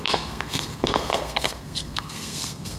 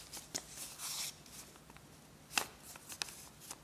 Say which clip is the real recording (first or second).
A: second